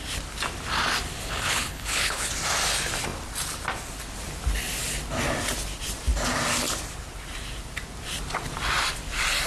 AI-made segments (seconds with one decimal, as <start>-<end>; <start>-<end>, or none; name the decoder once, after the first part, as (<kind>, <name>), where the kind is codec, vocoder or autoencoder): 1.2-2.3 (codec, HILCodec)